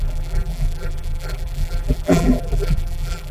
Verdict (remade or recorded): remade